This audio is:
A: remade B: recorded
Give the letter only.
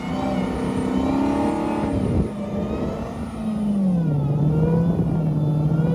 B